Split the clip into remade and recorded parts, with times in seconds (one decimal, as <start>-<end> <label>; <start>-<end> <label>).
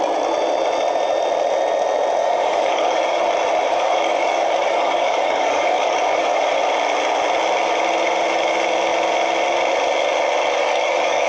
0.0-2.2 recorded; 2.2-3.2 remade; 3.2-3.7 recorded; 3.7-6.4 remade; 6.4-10.6 recorded; 10.6-11.3 remade